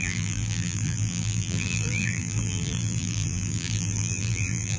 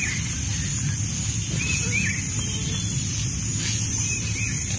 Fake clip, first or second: first